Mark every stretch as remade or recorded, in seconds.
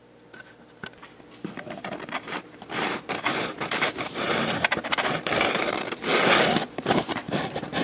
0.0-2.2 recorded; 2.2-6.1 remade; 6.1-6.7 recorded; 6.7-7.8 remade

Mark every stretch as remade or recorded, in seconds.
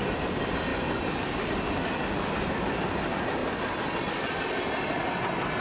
0.0-0.7 recorded; 0.7-1.4 remade; 1.4-5.6 recorded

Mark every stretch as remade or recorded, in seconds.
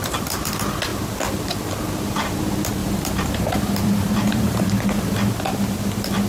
0.0-2.8 recorded; 2.8-5.3 remade; 5.3-6.3 recorded